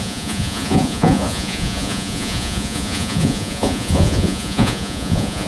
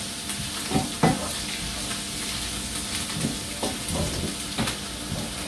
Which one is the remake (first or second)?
first